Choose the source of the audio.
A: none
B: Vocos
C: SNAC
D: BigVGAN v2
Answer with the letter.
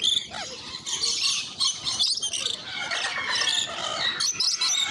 A